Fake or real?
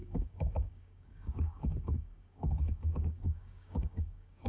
fake